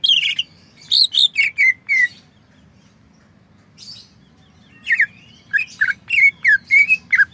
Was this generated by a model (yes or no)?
no